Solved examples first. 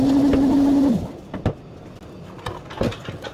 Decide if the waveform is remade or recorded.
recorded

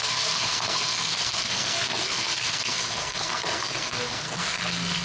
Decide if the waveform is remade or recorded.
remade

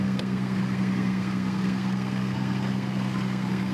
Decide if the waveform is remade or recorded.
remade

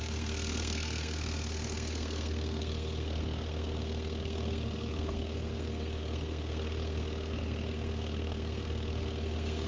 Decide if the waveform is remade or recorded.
remade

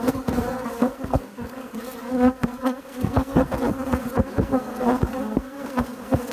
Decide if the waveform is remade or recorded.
remade